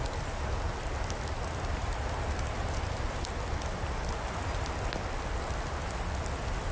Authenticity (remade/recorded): recorded